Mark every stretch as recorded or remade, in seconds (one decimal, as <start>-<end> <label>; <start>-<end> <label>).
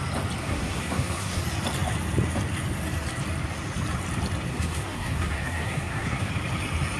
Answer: 0.0-0.4 recorded; 0.4-1.4 remade; 1.4-4.5 recorded; 4.5-6.3 remade; 6.3-7.0 recorded